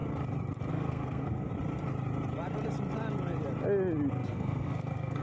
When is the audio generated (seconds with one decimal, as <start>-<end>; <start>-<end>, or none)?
0.7-1.5; 4.1-5.2